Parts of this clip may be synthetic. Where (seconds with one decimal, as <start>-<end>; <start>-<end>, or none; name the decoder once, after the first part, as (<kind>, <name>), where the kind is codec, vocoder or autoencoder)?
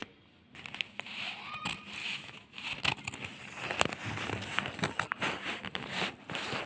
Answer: 2.0-2.6 (autoencoder, DAC-VAE)